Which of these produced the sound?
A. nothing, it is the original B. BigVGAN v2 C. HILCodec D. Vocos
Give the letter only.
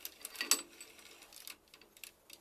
A